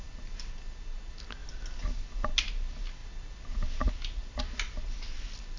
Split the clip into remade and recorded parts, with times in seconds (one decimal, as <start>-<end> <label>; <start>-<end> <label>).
0.0-5.6 recorded